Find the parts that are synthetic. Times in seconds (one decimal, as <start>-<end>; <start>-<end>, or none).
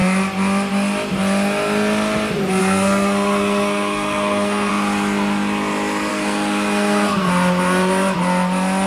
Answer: 2.6-4.7; 6.1-7.3